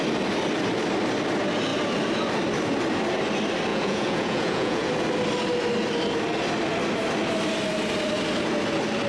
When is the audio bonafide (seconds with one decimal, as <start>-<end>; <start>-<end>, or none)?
0.0-3.7; 4.9-9.1